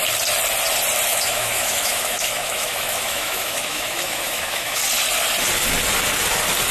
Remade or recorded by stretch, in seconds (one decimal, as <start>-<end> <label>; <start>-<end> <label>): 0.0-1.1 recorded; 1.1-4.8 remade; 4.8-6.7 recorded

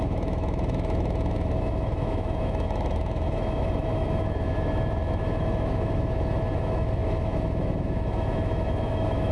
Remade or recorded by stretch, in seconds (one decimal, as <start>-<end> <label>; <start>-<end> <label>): 0.0-9.3 remade

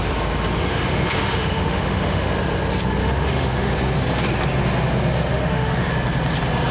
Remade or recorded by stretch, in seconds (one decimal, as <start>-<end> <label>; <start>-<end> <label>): 0.0-0.7 recorded; 0.7-2.3 remade; 2.3-3.0 recorded; 3.0-3.7 remade; 3.7-5.3 recorded; 5.3-5.9 remade; 5.9-6.7 recorded

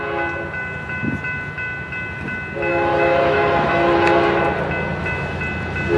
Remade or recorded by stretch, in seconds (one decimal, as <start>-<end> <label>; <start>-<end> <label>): 0.0-2.7 recorded; 2.7-3.9 remade; 3.9-6.0 recorded

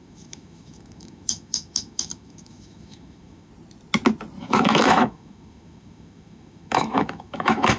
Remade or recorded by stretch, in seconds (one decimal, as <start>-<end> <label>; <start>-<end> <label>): 0.0-3.5 remade; 3.5-4.4 recorded; 4.4-7.8 remade

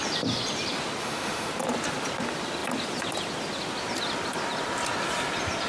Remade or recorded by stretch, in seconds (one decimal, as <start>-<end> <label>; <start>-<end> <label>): 0.0-1.0 recorded; 1.0-1.5 remade; 1.5-5.7 recorded

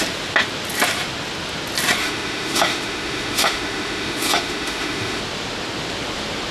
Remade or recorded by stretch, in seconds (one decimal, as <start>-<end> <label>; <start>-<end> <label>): 0.0-2.0 recorded; 2.0-5.2 remade; 5.2-6.5 recorded

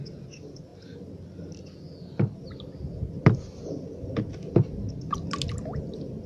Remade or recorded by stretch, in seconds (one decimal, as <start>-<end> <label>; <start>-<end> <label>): 0.0-6.3 recorded